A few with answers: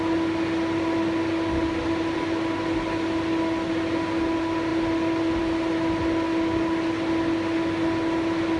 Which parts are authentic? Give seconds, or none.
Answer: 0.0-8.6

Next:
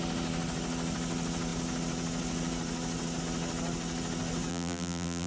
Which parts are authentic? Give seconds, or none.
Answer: 0.0-4.5

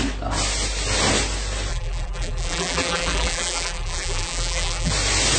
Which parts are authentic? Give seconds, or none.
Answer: 0.0-1.7; 4.9-5.4

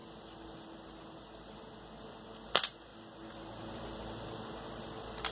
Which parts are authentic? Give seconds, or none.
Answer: none